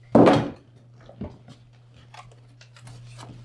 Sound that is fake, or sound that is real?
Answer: real